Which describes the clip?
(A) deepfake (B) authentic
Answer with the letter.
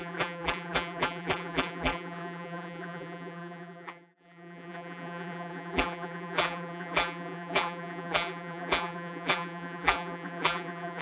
A